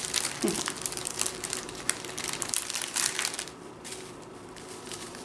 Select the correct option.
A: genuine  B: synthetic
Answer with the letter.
A